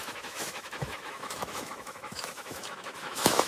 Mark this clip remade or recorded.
remade